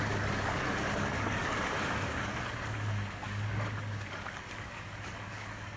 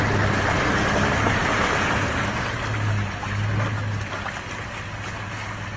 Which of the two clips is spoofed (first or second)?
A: first